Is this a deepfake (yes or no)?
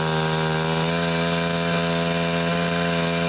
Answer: no